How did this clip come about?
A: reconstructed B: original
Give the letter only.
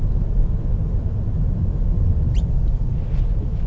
B